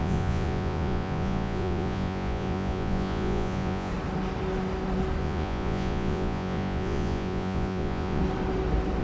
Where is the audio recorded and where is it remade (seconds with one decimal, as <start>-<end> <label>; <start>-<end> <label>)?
0.0-3.9 remade; 3.9-5.2 recorded; 5.2-8.2 remade; 8.2-9.0 recorded